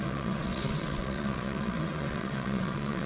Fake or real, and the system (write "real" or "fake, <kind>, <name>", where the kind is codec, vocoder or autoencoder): fake, vocoder, WaveNeXt